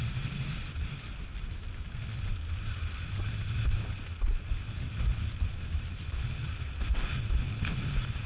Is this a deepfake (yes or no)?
no